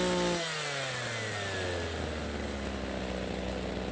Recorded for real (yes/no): yes